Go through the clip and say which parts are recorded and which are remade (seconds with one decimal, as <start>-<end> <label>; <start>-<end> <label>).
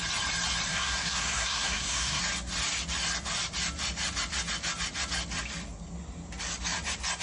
0.0-0.7 recorded; 0.7-2.2 remade; 2.2-7.2 recorded